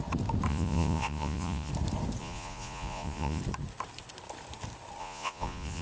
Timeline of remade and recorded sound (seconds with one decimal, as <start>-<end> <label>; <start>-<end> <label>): 0.0-0.5 recorded; 0.5-1.7 remade; 1.7-2.2 recorded; 2.2-3.4 remade; 3.4-5.0 recorded; 5.0-5.8 remade